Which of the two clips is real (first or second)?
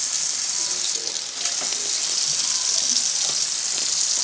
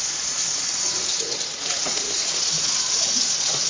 first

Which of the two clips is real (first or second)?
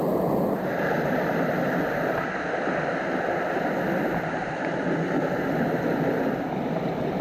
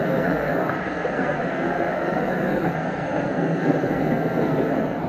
first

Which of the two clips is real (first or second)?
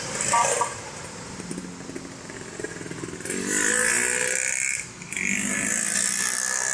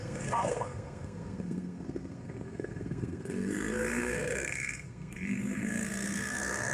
first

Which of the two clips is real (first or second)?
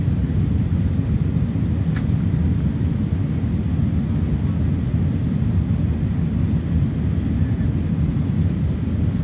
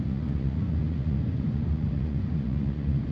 first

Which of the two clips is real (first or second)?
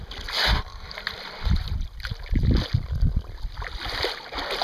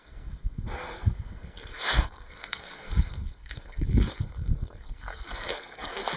first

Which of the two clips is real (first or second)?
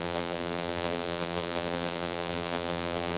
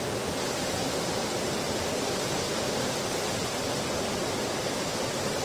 second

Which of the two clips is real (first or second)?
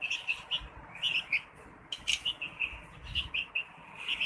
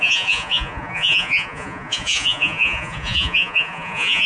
first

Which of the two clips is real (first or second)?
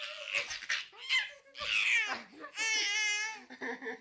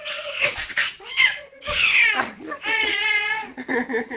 first